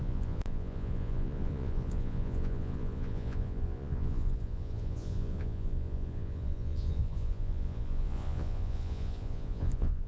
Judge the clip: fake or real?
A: fake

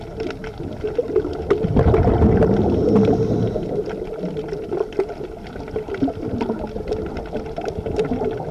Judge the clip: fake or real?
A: real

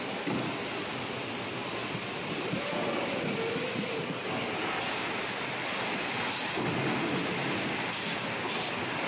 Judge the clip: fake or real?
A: real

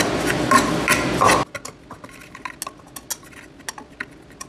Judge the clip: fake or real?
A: real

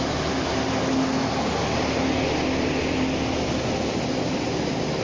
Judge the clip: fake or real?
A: real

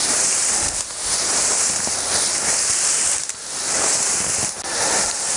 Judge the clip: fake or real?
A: real